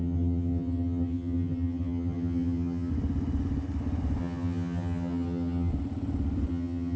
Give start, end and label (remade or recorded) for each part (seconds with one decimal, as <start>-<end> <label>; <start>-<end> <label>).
0.0-2.9 remade; 2.9-4.2 recorded; 4.2-5.7 remade; 5.7-6.5 recorded; 6.5-7.0 remade